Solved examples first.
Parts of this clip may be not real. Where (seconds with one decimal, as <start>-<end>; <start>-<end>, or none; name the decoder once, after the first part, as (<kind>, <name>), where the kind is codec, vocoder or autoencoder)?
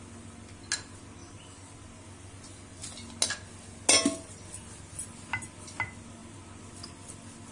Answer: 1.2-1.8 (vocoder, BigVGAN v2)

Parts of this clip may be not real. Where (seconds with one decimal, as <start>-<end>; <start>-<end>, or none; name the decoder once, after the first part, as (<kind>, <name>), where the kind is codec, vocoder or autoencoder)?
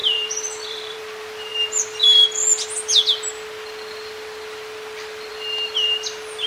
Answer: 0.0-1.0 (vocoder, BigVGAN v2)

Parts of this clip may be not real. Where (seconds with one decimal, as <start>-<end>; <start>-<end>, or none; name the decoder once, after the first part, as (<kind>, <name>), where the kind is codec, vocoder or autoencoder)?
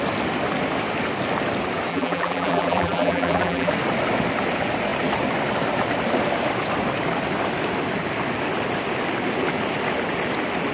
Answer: 1.9-3.7 (vocoder, BigVGAN v2)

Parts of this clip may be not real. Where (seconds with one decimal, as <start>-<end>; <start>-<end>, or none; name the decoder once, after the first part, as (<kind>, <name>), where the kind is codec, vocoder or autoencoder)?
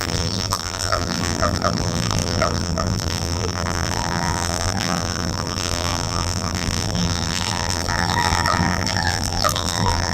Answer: 0.0-10.1 (vocoder, BigVGAN v2)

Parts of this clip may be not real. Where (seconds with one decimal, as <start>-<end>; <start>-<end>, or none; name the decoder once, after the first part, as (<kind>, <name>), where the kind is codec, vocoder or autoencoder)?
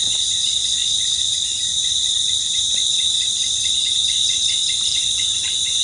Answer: 0.0-5.8 (vocoder, BigVGAN v2)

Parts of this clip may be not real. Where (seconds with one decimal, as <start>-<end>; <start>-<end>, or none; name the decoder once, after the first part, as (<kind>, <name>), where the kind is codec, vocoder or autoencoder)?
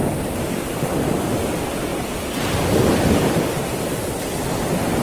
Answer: 1.9-4.0 (vocoder, BigVGAN v2)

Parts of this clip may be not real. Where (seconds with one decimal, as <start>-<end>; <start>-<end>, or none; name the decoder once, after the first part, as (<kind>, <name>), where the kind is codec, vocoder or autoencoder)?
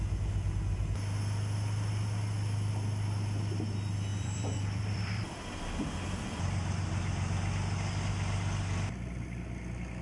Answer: 4.1-5.6 (vocoder, BigVGAN v2)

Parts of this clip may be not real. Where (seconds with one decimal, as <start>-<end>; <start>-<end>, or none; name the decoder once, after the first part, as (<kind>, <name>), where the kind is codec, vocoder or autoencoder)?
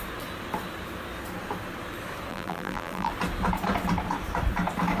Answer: 2.3-3.1 (vocoder, BigVGAN v2)